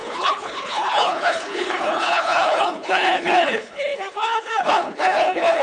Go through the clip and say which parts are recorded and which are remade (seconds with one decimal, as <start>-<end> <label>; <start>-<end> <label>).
0.0-5.6 remade